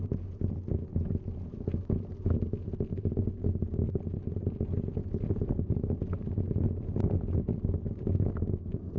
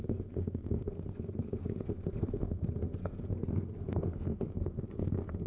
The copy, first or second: second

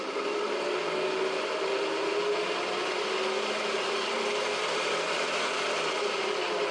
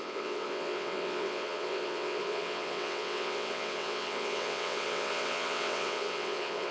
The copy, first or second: second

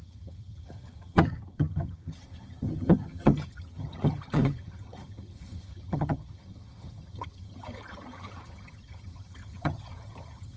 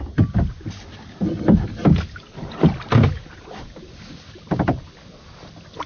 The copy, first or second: first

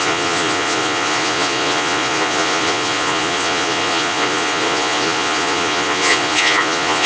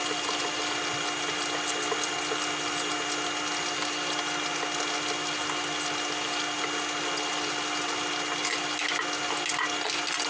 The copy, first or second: first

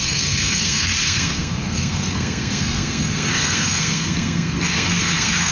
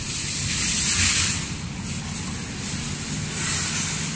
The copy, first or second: first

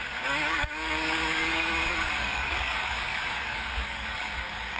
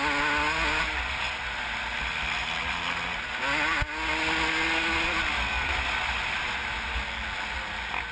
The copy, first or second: first